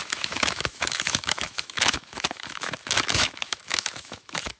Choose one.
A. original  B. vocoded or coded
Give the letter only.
B